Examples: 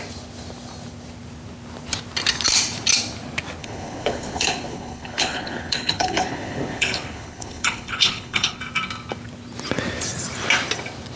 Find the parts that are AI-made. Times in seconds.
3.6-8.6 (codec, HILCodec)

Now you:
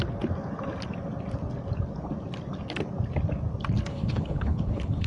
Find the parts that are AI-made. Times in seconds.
3.9-5.1 (codec, HILCodec)

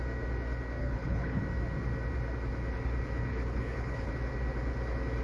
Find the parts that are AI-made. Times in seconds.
0.8-1.4 (codec, HILCodec); 3.3-4.1

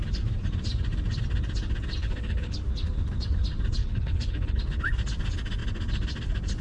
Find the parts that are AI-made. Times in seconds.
2.0-2.6 (codec, HILCodec); 3.8-4.6

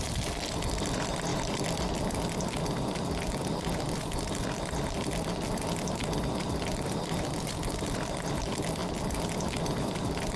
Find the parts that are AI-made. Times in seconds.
none

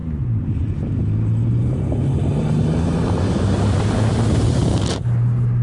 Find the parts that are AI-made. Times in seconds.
none